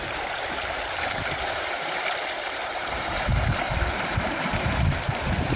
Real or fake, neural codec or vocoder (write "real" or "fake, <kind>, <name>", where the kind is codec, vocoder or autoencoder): fake, vocoder, BigVGAN v2